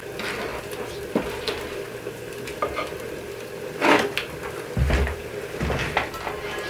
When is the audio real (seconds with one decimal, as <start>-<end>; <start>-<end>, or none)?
0.0-0.5; 4.5-6.7

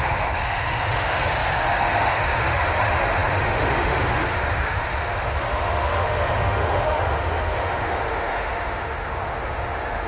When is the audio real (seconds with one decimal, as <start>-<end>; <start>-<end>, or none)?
none